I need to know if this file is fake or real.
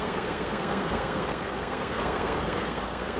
fake